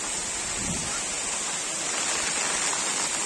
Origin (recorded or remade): recorded